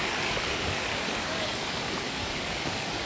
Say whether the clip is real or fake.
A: fake